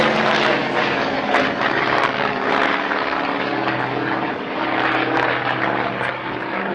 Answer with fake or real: fake